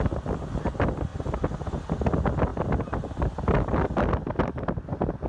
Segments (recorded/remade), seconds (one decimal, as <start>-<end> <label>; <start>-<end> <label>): 0.0-5.3 recorded